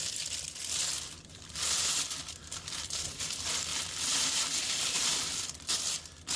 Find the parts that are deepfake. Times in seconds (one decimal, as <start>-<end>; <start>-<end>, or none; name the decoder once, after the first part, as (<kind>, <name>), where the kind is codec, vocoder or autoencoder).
none